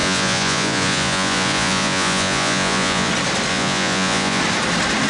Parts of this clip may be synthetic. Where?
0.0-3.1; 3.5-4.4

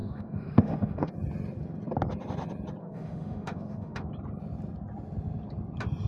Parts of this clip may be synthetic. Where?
0.0-1.1; 2.8-4.1

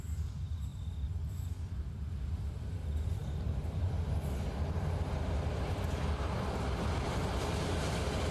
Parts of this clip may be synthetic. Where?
none

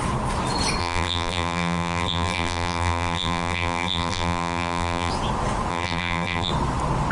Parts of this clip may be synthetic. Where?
0.8-5.1; 5.7-6.5

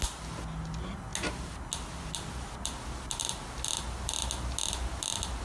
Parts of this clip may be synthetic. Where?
none

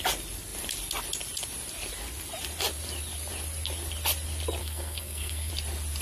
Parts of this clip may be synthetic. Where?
4.6-5.5

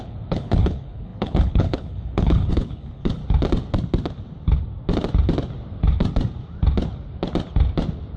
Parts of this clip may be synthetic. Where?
0.0-3.2